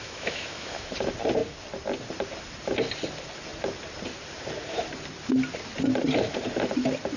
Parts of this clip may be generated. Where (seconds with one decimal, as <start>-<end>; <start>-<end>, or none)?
0.0-0.9